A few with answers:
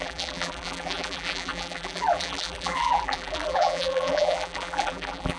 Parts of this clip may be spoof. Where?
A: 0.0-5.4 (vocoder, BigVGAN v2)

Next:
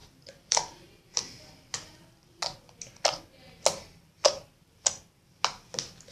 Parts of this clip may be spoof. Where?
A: 0.0-1.4 (vocoder, BigVGAN v2)

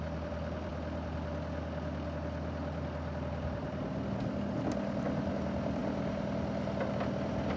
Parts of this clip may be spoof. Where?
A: 0.0-0.7 (vocoder, BigVGAN v2); 5.3-5.8; 6.9-7.6

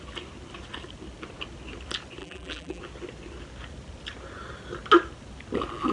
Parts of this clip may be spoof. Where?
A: 2.2-2.8 (vocoder, BigVGAN v2)